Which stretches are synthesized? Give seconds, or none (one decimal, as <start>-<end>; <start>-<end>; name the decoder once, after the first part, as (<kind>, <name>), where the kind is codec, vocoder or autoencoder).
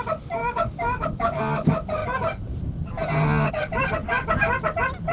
0.4-1.4 (codec, DAC)